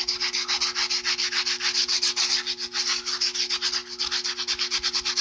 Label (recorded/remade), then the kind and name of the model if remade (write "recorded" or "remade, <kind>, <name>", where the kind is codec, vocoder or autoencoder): recorded